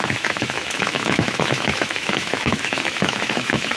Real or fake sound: fake